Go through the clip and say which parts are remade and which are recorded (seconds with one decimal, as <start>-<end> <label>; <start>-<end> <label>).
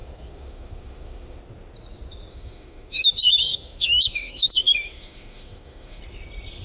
0.0-1.4 remade; 1.4-2.3 recorded; 2.3-6.0 remade; 6.0-6.6 recorded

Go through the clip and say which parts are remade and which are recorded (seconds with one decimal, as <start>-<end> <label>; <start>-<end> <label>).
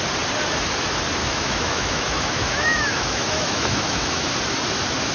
0.0-1.2 recorded; 1.2-4.3 remade; 4.3-5.1 recorded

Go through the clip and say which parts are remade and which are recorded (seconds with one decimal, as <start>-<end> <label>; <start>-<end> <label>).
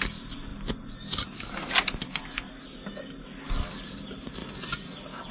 0.0-5.3 recorded